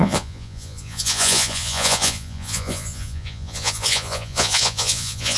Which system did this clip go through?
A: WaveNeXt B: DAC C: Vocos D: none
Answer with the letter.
C